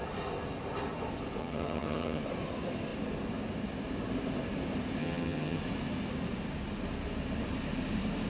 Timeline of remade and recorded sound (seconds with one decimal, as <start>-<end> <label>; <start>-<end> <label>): 0.0-1.4 recorded; 1.4-2.2 remade; 2.2-5.0 recorded; 5.0-5.6 remade; 5.6-8.3 recorded